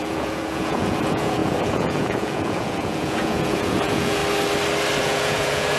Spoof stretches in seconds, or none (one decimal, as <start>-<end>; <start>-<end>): 0.0-4.2; 5.0-5.8